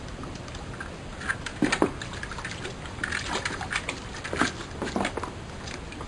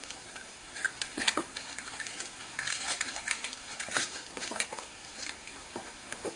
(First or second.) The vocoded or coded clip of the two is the second